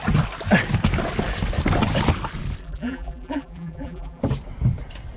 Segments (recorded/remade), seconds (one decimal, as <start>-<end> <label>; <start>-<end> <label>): 0.0-2.6 recorded; 2.6-4.2 remade; 4.2-5.2 recorded